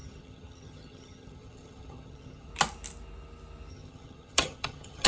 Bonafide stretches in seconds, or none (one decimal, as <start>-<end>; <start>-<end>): 2.5-3.7